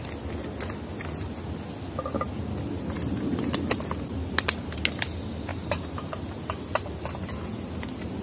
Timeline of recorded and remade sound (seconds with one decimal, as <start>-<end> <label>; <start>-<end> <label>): 0.0-5.5 recorded; 5.5-6.7 remade; 6.7-8.2 recorded